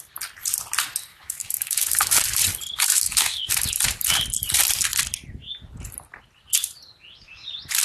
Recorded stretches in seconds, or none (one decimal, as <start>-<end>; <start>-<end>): 0.0-1.1; 2.2-2.9; 3.5-7.8